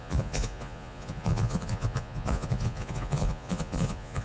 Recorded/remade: remade